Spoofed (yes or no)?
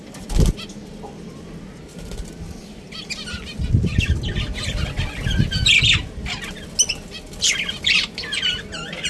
no